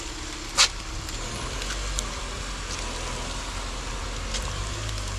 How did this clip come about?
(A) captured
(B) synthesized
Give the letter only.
A